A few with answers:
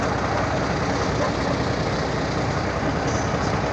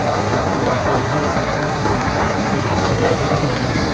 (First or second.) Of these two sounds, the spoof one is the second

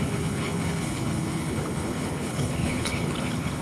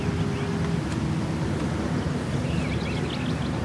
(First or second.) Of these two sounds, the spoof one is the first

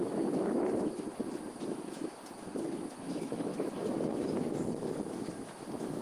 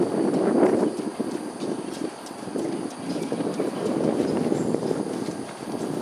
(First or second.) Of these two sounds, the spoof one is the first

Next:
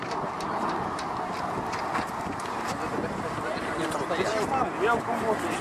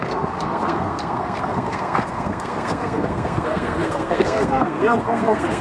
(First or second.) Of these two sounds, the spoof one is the second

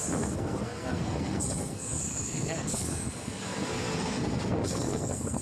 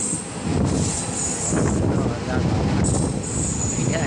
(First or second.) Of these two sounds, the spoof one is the first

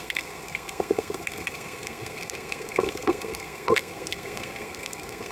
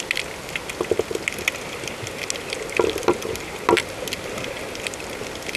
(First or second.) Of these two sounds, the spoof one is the first